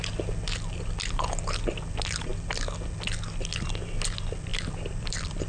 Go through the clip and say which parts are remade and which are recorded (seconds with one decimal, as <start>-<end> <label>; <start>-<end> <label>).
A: 0.0-4.5 recorded; 4.5-5.5 remade